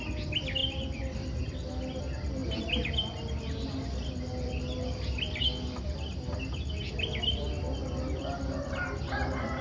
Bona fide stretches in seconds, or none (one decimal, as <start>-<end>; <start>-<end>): 0.0-9.6